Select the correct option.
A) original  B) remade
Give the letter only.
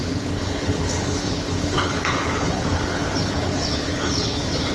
B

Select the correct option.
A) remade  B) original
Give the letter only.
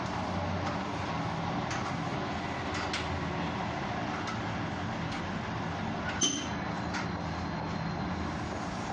B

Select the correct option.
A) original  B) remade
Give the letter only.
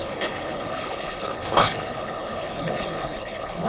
B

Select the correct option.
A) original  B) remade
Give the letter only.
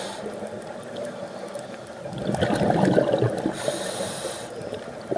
A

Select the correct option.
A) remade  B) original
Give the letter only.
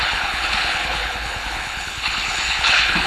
A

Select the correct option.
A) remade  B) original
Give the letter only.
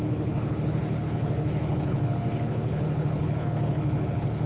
A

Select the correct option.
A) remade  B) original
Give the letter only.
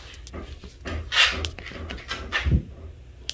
B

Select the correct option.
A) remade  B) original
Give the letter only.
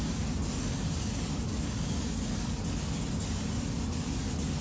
B